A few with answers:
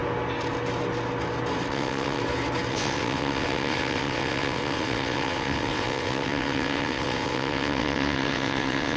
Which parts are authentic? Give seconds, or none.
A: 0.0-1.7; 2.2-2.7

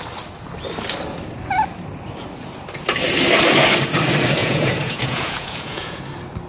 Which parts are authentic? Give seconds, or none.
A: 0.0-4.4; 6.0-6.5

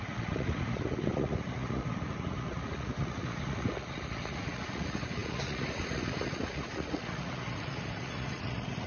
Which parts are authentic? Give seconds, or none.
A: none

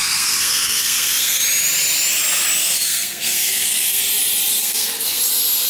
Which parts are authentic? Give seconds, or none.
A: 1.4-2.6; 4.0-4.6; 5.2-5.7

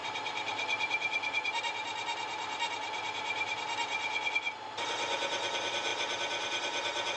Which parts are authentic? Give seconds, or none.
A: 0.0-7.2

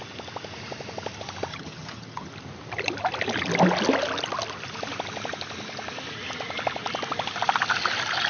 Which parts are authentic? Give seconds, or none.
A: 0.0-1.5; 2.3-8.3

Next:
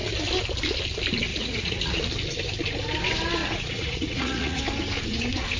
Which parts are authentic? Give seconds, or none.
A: 0.0-1.3; 2.0-3.4; 4.6-5.6